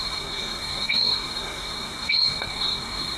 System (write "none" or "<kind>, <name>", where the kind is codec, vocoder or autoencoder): codec, SNAC